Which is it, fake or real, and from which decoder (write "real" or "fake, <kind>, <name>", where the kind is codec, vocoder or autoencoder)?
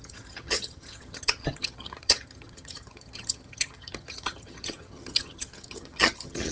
fake, vocoder, HiFi-GAN